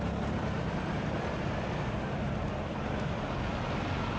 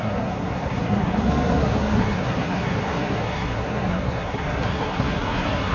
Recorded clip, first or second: first